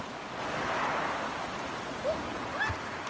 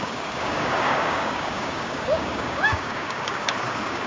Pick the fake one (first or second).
second